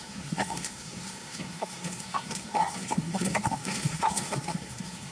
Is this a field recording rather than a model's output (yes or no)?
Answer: no